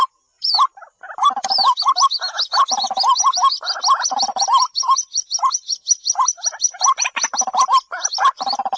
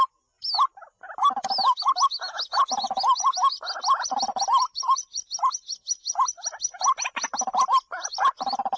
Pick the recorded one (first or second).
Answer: second